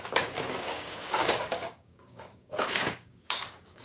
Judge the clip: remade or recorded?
remade